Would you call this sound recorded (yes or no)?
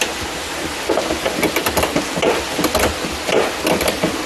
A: yes